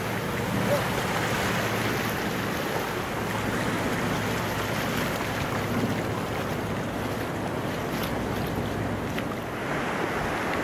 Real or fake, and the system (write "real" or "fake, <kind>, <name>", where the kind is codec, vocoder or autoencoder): real